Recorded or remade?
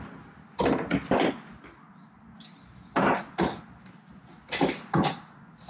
recorded